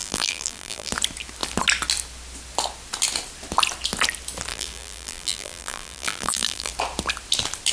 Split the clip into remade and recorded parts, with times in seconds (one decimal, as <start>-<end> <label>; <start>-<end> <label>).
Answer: 0.0-0.9 remade; 0.9-4.5 recorded; 4.5-6.7 remade; 6.7-7.7 recorded